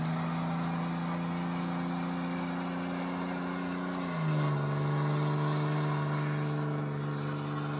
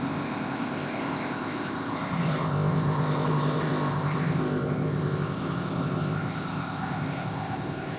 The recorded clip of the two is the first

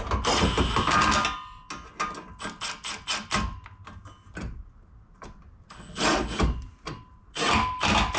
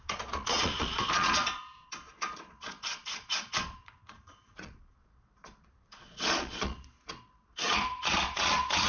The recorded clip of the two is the first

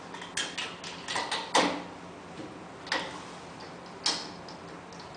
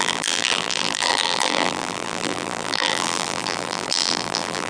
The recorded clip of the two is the first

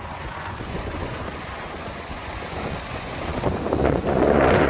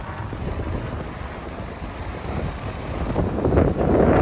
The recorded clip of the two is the second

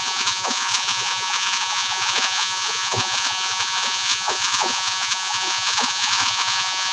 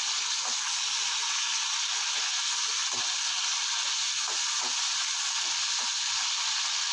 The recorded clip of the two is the second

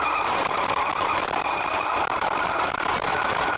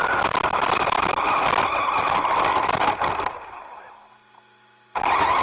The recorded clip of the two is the second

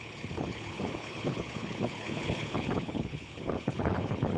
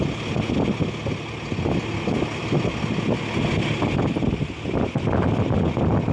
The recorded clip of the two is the second